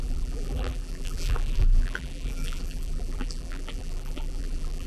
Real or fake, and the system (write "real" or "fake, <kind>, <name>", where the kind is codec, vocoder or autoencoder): fake, vocoder, BigVGAN v2